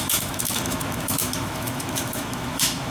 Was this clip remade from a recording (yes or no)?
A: yes